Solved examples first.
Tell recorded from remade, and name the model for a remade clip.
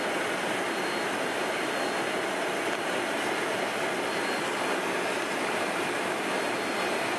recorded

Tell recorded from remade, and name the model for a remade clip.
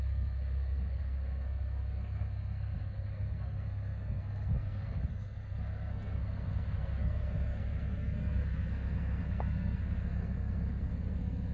remade, codec, SNAC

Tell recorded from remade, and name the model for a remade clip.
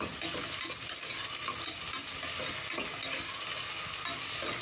recorded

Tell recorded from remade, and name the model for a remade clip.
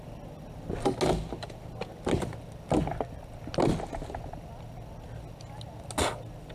recorded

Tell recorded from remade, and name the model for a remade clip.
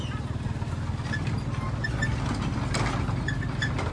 recorded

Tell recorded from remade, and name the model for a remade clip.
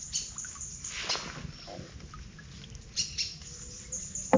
recorded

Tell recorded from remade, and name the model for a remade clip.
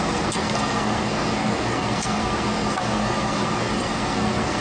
remade, codec, SNAC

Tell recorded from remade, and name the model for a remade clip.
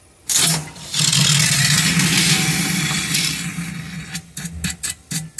recorded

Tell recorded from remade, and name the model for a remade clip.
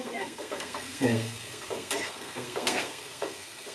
remade, codec, SNAC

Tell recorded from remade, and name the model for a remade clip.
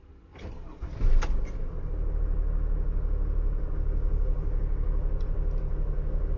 recorded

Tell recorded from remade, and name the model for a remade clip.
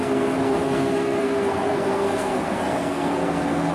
remade, codec, SNAC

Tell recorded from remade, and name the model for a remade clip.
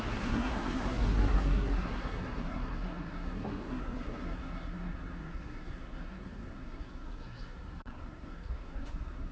remade, codec, SNAC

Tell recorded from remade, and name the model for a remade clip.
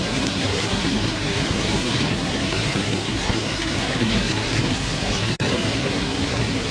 remade, codec, SNAC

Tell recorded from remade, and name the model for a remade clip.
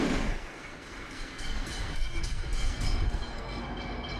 remade, codec, SNAC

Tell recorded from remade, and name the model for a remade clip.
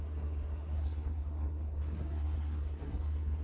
remade, codec, SNAC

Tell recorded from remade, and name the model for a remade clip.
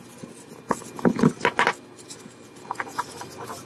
recorded